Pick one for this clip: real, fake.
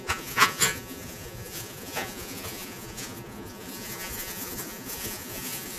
fake